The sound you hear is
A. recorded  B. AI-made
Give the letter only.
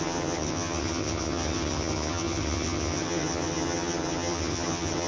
B